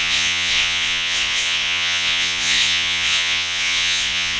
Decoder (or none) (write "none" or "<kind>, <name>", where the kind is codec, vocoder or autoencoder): vocoder, Vocos